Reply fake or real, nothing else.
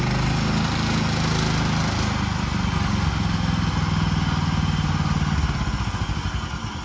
real